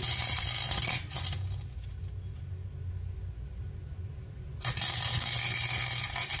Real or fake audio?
real